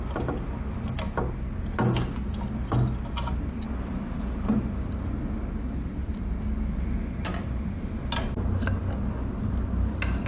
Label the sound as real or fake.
real